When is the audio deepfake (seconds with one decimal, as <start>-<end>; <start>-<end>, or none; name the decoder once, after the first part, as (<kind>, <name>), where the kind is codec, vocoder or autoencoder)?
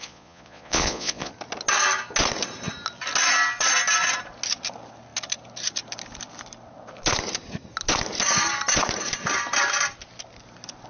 0.0-1.3 (vocoder, Vocos)